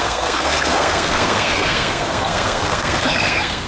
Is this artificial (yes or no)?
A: yes